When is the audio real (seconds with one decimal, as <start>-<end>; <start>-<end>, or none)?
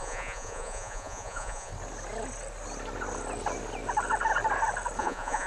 1.7-5.0